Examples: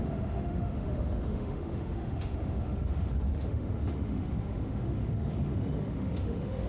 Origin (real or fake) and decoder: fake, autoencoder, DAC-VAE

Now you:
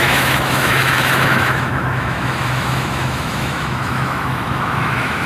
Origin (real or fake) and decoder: fake, autoencoder, DAC-VAE